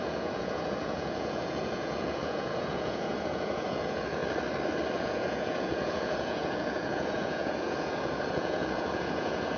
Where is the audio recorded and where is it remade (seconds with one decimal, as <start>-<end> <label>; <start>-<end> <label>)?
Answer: 0.0-4.2 remade; 4.2-5.0 recorded; 5.0-9.6 remade